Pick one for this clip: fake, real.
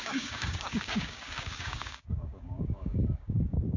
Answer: fake